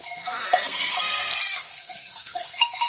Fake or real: fake